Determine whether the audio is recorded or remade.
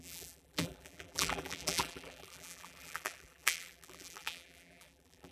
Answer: remade